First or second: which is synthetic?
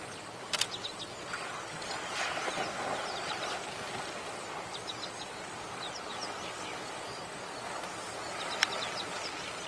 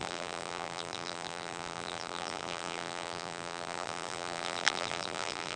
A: second